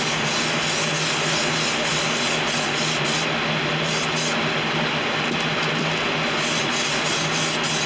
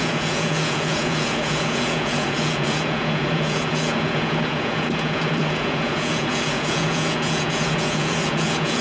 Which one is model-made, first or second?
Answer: second